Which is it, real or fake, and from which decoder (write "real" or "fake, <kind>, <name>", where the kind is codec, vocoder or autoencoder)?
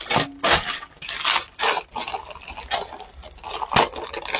real